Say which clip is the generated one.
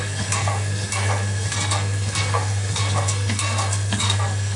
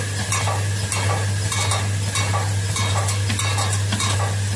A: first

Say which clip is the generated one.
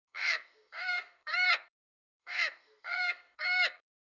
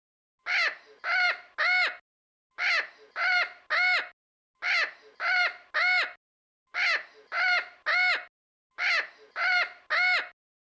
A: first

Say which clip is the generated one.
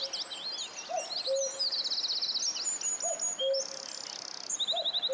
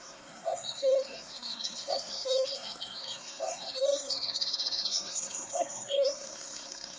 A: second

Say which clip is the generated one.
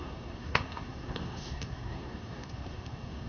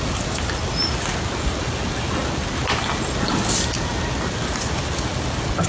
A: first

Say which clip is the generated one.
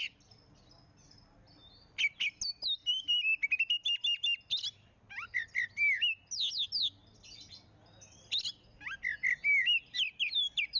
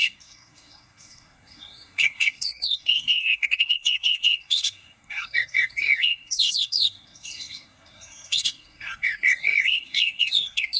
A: second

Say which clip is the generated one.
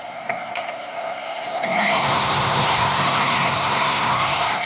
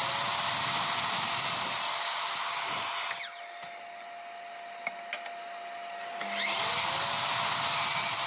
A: first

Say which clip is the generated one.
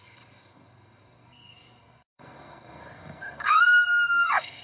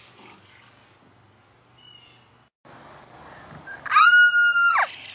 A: first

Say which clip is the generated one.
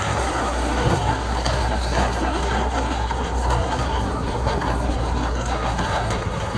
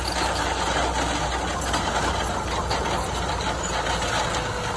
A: first